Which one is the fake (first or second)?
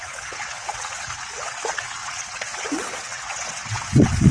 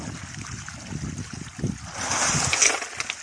first